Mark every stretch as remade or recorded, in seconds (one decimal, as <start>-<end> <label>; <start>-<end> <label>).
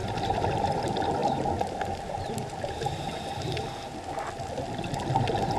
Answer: 0.0-5.6 recorded